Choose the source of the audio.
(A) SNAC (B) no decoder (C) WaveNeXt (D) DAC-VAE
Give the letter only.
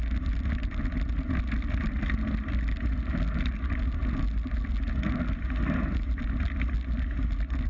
B